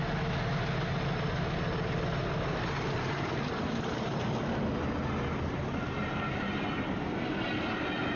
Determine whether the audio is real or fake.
real